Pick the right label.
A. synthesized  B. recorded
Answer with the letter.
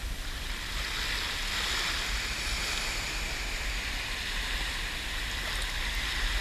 B